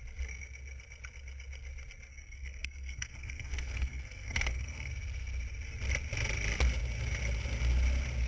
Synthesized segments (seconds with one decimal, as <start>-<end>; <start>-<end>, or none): 2.1-4.9